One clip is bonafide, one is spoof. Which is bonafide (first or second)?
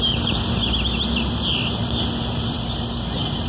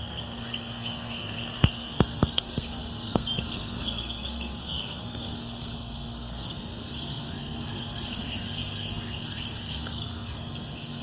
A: first